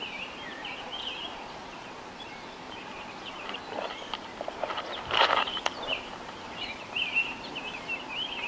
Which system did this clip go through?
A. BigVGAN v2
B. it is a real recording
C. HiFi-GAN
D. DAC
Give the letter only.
A